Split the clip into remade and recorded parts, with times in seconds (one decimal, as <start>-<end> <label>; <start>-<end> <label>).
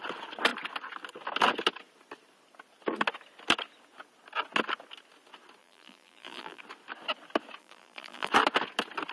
0.0-5.6 recorded; 5.6-6.6 remade; 6.6-7.6 recorded; 7.6-8.3 remade; 8.3-9.1 recorded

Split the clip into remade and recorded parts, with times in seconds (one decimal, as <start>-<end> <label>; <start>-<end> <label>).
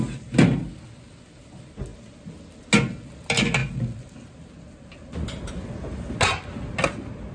0.0-7.3 recorded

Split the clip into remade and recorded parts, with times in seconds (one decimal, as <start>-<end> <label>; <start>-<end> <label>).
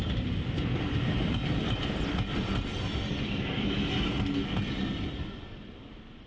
0.0-1.7 remade; 1.7-6.3 recorded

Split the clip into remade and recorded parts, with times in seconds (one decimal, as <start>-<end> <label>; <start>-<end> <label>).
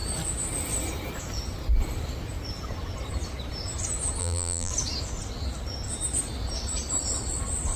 0.0-4.2 recorded; 4.2-4.7 remade; 4.7-7.8 recorded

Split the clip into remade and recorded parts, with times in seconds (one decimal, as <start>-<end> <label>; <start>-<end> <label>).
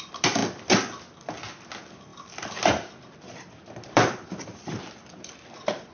0.0-2.1 recorded; 2.1-5.9 remade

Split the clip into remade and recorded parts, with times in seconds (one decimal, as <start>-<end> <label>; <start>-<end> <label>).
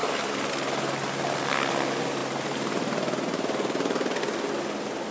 0.0-0.5 remade; 0.5-2.2 recorded; 2.2-4.2 remade; 4.2-5.1 recorded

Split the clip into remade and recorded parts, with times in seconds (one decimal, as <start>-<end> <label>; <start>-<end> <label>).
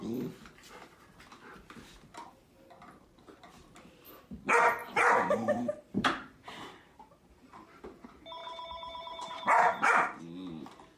0.0-4.8 recorded; 4.8-7.8 remade; 7.8-8.4 recorded; 8.4-10.2 remade; 10.2-11.0 recorded